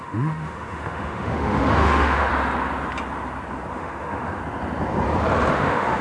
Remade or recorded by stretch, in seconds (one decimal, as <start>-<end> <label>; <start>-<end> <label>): 0.0-2.3 remade; 2.3-3.7 recorded; 3.7-4.4 remade; 4.4-5.5 recorded; 5.5-6.0 remade